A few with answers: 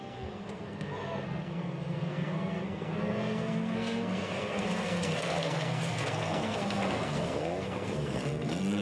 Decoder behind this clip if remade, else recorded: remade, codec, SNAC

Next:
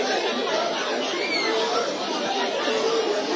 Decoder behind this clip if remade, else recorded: recorded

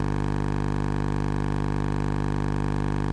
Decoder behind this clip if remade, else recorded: recorded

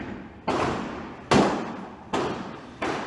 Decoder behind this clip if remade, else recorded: recorded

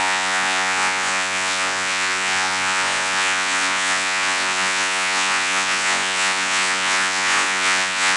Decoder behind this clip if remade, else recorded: remade, vocoder, Vocos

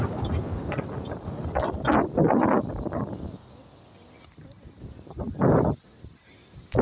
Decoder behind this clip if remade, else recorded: recorded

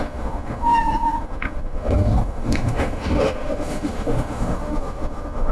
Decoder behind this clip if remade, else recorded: remade, autoencoder, DAC-VAE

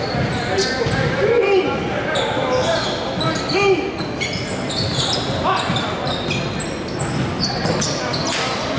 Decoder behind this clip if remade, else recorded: recorded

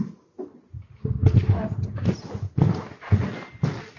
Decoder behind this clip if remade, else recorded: recorded